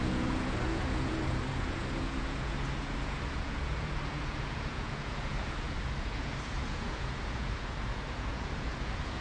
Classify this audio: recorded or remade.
remade